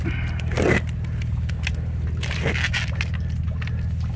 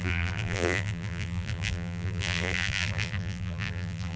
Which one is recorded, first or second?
first